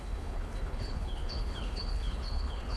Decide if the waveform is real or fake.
fake